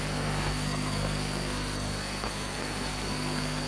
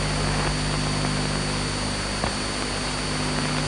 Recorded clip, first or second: second